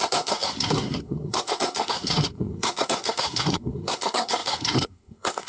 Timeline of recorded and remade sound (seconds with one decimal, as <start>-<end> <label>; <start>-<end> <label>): 0.0-5.5 remade